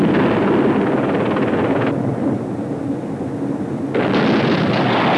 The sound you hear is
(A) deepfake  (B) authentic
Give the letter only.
B